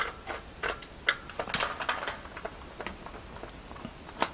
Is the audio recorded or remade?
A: recorded